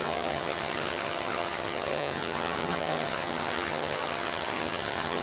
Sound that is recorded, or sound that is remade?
remade